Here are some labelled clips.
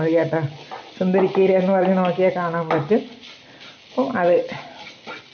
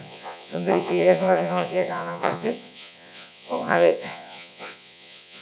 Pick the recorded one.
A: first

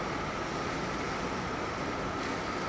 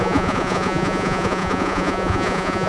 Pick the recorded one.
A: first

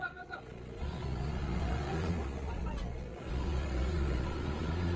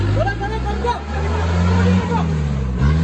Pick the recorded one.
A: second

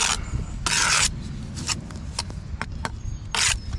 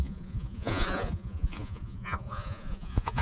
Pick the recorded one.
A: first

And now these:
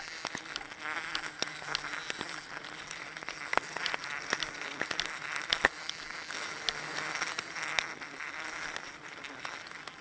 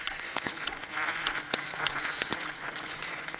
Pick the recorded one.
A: first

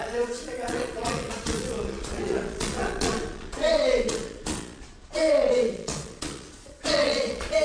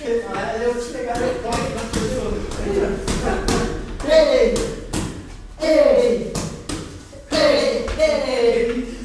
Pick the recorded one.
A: second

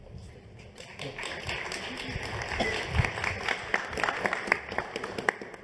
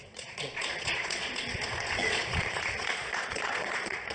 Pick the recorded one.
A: first